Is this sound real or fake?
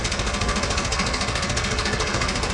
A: fake